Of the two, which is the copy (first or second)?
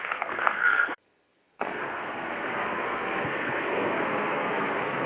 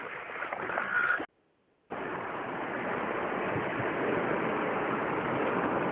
first